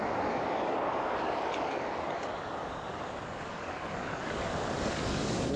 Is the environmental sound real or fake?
fake